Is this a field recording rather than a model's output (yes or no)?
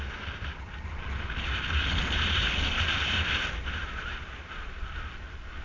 yes